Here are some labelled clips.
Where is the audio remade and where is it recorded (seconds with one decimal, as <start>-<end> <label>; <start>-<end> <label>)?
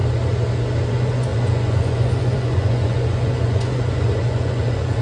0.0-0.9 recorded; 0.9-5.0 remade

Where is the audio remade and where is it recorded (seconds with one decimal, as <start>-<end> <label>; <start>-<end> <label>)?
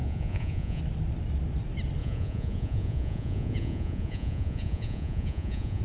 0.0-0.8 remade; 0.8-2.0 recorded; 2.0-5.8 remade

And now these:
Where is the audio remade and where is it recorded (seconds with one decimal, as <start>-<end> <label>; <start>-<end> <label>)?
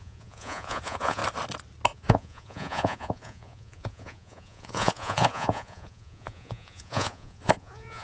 0.0-1.2 remade; 1.2-1.9 recorded; 1.9-8.0 remade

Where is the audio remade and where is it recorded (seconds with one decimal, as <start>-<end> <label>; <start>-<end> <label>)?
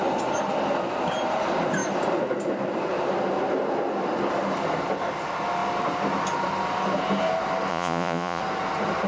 0.0-7.7 recorded; 7.7-8.4 remade; 8.4-9.1 recorded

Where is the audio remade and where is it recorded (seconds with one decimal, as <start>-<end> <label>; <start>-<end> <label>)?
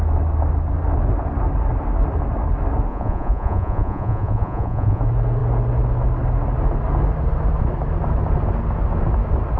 0.0-2.9 recorded; 2.9-5.0 remade; 5.0-9.6 recorded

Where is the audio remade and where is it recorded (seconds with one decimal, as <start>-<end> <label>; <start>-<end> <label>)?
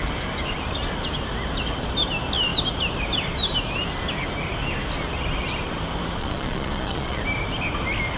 0.0-6.2 recorded; 6.2-7.2 remade; 7.2-8.2 recorded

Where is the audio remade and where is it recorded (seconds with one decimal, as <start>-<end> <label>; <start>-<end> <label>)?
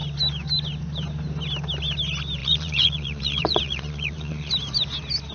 0.0-2.4 recorded; 2.4-4.5 remade; 4.5-5.3 recorded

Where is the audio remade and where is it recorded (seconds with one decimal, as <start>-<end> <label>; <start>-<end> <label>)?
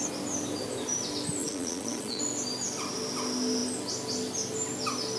0.0-1.4 recorded; 1.4-2.2 remade; 2.2-5.2 recorded